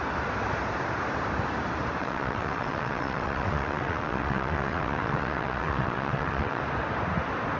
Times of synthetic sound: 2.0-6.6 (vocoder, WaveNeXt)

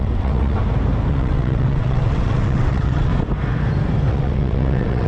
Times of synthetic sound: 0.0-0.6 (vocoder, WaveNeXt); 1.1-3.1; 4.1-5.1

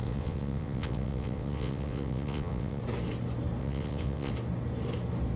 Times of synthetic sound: 0.0-2.8 (vocoder, WaveNeXt); 3.6-4.3

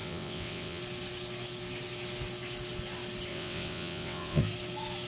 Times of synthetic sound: 0.0-0.8 (vocoder, WaveNeXt); 3.3-4.4

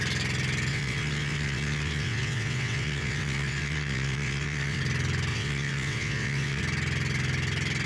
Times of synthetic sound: 0.7-4.8 (vocoder, WaveNeXt); 5.3-6.6